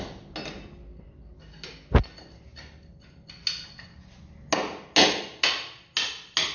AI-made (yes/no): no